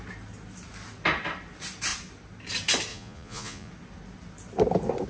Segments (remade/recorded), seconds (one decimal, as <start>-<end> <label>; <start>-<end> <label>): 0.0-2.9 recorded; 2.9-3.7 remade; 3.7-5.1 recorded